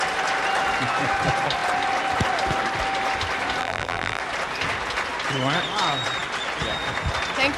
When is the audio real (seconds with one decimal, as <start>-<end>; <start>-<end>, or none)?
0.0-3.6; 4.2-7.6